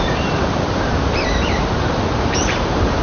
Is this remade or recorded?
remade